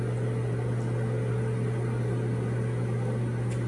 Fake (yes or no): no